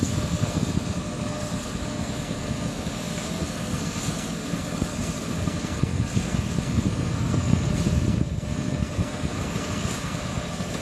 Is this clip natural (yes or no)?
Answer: no